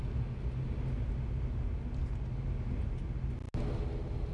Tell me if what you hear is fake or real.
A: real